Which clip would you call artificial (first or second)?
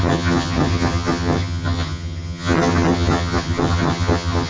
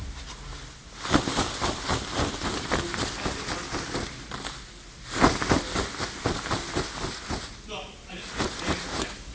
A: first